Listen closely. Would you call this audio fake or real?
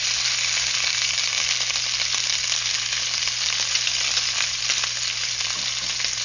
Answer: real